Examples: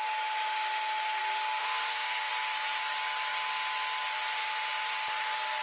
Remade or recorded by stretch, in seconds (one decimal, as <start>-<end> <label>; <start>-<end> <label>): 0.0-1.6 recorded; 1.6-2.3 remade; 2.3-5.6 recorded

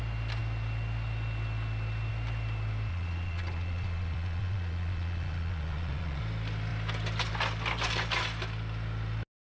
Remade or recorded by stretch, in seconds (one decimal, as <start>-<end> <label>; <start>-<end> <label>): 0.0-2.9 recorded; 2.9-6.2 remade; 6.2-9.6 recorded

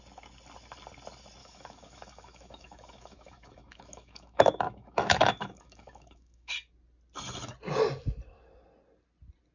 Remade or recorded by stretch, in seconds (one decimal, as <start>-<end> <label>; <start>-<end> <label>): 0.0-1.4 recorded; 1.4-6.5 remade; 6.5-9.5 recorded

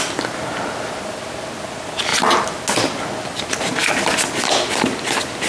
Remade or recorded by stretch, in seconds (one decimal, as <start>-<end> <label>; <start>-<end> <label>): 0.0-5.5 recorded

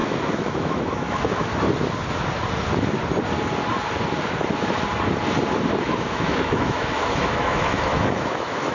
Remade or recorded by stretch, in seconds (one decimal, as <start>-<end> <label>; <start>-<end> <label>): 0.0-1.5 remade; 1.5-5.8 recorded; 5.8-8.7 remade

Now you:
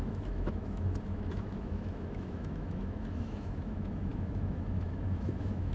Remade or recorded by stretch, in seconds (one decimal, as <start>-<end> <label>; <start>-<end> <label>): 0.0-5.7 remade